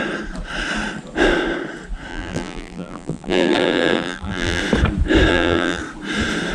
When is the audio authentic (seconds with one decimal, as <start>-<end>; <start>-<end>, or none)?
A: 0.0-2.1; 4.6-5.3; 5.8-6.5